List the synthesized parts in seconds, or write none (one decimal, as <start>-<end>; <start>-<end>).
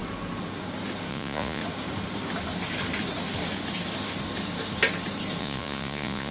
1.1-1.6; 5.4-6.3